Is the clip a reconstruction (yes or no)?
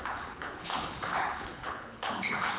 yes